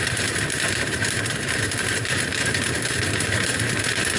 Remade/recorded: remade